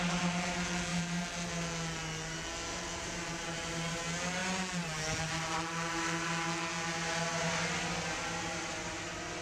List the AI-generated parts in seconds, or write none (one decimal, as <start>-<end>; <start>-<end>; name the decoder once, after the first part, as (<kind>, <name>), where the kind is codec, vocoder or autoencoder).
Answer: 0.9-1.5 (vocoder, BigVGAN v2); 2.7-4.0